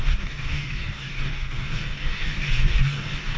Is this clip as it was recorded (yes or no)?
no